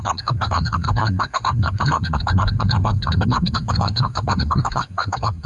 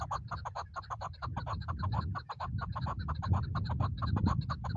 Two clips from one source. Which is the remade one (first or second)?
first